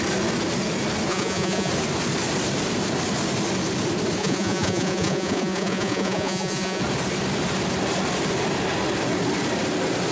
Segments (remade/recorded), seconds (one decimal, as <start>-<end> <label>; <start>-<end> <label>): 0.0-1.1 recorded; 1.1-1.7 remade; 1.7-4.2 recorded; 4.2-6.8 remade; 6.8-10.1 recorded